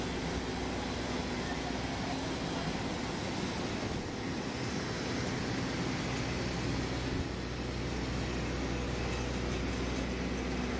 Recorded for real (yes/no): yes